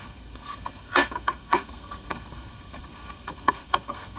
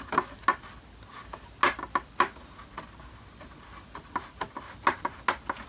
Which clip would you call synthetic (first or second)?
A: first